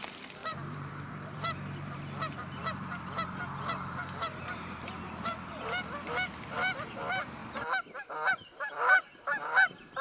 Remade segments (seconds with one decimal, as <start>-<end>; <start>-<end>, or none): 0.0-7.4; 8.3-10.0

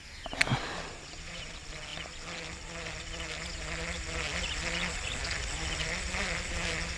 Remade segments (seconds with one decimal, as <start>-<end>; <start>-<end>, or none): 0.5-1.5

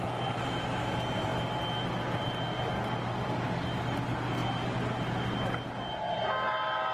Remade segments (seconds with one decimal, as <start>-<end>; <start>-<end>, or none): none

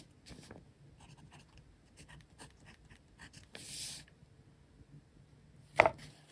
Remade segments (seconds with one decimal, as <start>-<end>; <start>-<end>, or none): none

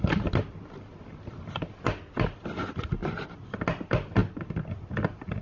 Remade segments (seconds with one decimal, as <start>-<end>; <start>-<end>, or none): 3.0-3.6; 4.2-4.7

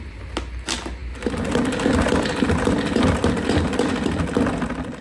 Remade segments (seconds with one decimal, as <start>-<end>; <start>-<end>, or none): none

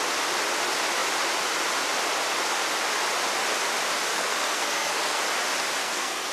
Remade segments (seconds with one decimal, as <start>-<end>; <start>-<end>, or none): 4.1-5.2; 5.8-6.3